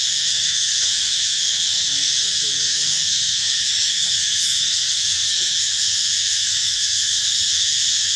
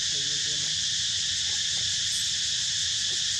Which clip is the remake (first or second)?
first